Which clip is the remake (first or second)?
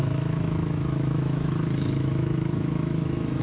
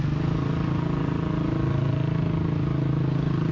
first